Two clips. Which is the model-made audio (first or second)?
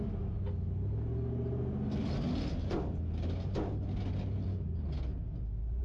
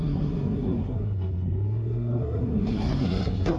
second